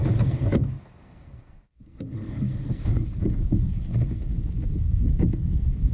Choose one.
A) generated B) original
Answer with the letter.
A